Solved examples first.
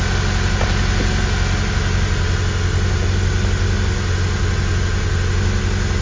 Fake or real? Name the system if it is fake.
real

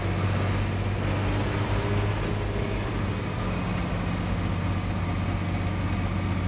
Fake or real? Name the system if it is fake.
real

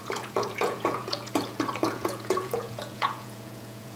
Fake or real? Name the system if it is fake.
fake, vocoder, Vocos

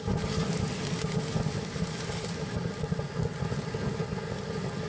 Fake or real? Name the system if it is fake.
real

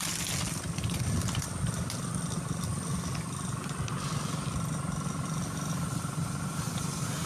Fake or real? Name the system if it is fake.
real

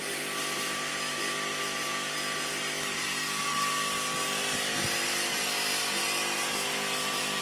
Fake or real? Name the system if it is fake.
real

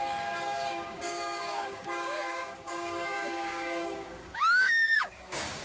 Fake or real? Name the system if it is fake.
fake, codec, DAC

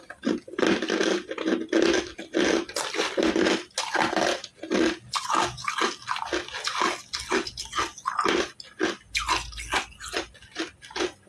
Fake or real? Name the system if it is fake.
real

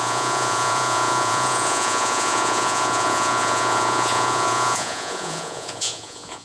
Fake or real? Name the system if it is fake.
fake, vocoder, Vocos